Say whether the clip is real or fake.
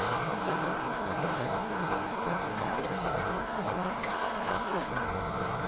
fake